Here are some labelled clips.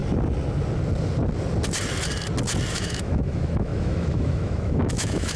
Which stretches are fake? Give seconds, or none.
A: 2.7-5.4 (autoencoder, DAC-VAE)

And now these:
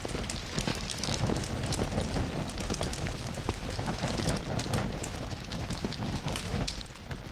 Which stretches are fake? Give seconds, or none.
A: 0.7-1.4 (autoencoder, DAC-VAE); 2.9-4.3; 5.0-6.7

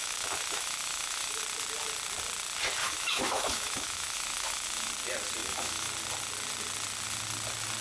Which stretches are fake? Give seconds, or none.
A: 0.0-1.4 (autoencoder, DAC-VAE); 2.8-4.9; 5.4-5.9

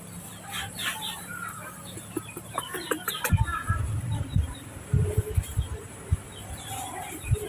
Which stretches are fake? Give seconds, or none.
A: none